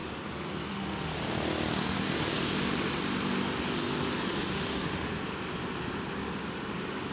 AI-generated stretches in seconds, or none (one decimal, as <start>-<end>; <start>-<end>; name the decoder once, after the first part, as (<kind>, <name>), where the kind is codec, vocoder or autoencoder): 0.7-1.1 (autoencoder, DAC-VAE); 4.5-5.1